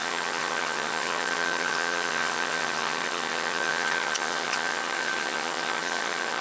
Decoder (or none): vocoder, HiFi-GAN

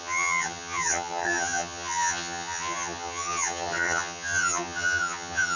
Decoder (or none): vocoder, HiFi-GAN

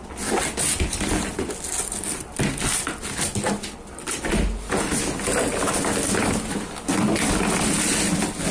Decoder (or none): none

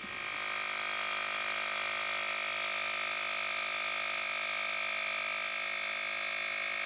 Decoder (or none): none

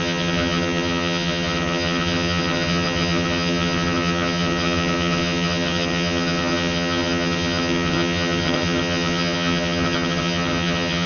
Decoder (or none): vocoder, HiFi-GAN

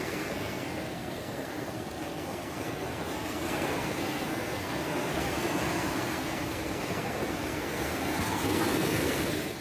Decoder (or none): codec, SNAC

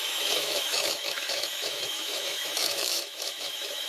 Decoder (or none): autoencoder, DAC-VAE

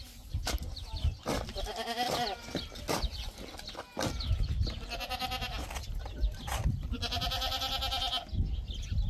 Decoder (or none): none